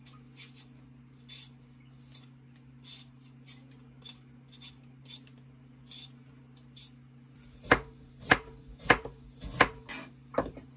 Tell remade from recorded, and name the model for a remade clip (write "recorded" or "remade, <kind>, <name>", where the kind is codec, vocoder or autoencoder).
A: recorded